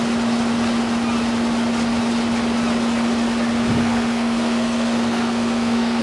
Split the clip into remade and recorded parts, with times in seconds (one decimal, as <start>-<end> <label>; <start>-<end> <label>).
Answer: 0.0-3.8 recorded; 3.8-6.0 remade